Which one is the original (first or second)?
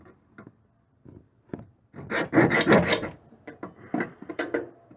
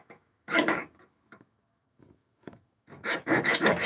first